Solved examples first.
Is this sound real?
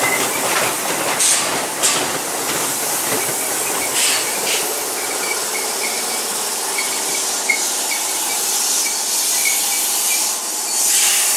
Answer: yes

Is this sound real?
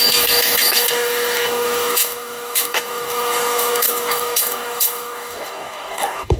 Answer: no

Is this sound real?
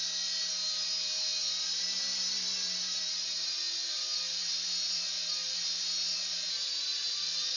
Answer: yes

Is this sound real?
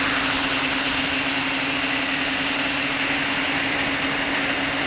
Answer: yes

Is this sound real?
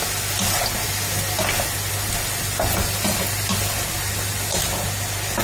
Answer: yes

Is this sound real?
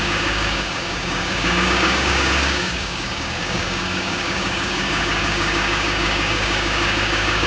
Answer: no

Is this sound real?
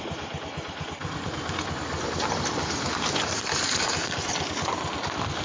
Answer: yes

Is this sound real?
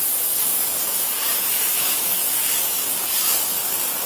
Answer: no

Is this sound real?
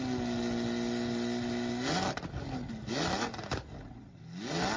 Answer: yes